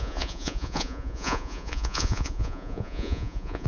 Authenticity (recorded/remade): remade